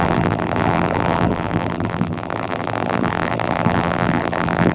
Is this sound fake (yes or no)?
yes